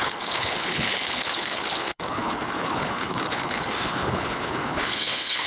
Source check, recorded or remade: remade